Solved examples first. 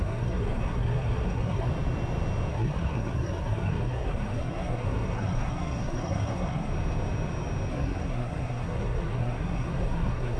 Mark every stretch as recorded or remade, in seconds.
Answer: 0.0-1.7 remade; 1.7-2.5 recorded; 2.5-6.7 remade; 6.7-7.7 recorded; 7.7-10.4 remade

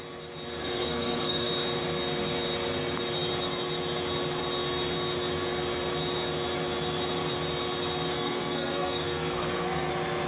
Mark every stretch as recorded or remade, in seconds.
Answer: 0.0-0.6 recorded; 0.6-1.5 remade; 1.5-8.1 recorded; 8.1-9.9 remade; 9.9-10.3 recorded